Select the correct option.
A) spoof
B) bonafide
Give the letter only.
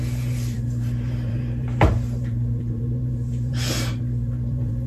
A